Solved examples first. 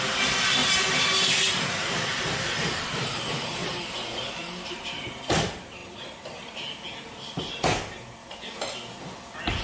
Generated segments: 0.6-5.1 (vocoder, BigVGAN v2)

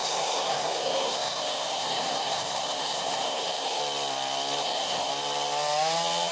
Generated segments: 0.0-3.8 (codec, SNAC); 4.6-5.1

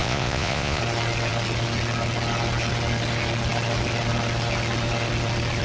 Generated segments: 0.0-0.8 (vocoder, Vocos)

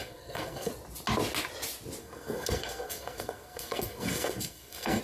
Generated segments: 0.0-0.7 (codec, SNAC); 2.0-5.0

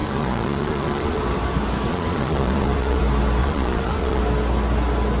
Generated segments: 0.0-1.2 (vocoder, Vocos); 1.9-3.0; 3.4-4.2

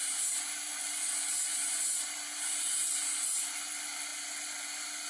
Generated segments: 0.0-0.7 (vocoder, BigVGAN v2); 1.5-2.1